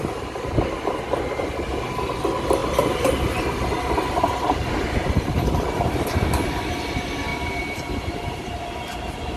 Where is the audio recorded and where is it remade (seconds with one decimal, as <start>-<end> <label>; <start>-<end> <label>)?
0.0-7.3 recorded; 7.3-9.4 remade